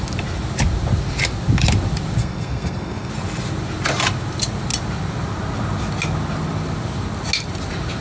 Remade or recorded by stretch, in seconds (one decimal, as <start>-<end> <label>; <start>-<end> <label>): 0.0-2.2 recorded; 2.2-3.1 remade; 3.1-8.0 recorded